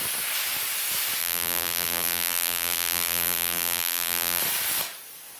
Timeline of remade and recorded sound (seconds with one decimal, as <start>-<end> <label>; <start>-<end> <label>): 0.0-1.2 recorded; 1.2-4.4 remade; 4.4-5.4 recorded